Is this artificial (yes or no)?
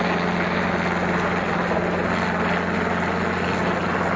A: no